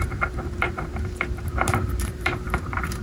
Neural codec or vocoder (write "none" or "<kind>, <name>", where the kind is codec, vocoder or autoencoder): vocoder, BigVGAN v2